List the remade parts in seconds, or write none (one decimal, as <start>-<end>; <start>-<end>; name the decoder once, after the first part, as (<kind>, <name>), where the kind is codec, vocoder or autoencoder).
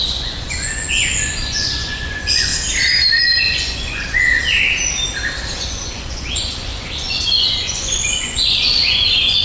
0.0-2.5 (vocoder, Vocos); 3.4-4.4; 5.6-9.4